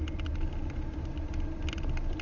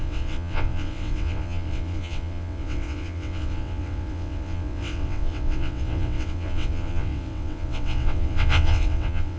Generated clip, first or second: second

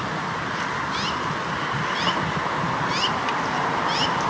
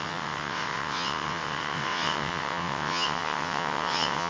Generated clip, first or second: second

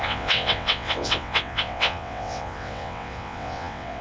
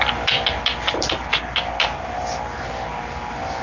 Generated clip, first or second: first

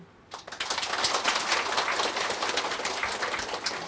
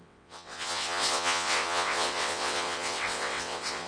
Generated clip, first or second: second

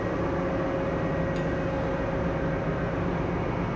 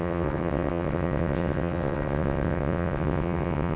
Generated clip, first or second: second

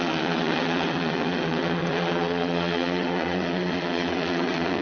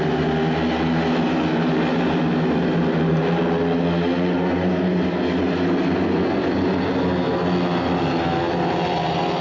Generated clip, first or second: first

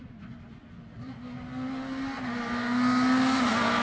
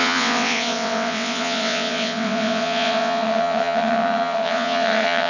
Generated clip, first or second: second